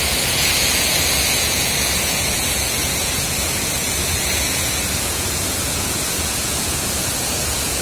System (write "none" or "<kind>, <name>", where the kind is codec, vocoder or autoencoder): vocoder, Vocos